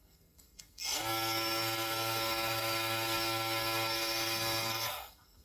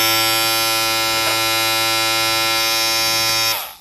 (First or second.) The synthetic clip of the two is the first